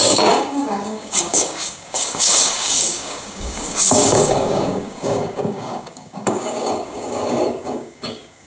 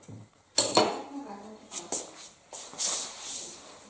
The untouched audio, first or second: second